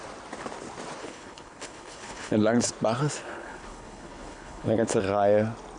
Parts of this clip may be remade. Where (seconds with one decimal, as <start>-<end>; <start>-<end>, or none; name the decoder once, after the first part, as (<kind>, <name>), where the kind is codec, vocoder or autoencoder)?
1.0-2.7 (codec, HILCodec); 3.2-5.0